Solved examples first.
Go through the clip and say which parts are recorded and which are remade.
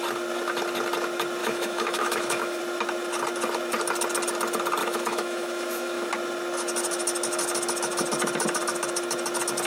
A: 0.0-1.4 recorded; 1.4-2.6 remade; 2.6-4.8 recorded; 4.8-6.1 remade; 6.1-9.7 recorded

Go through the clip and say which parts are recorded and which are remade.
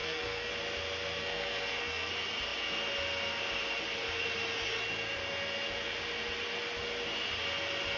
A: 0.0-0.5 remade; 0.5-1.2 recorded; 1.2-2.1 remade; 2.1-8.0 recorded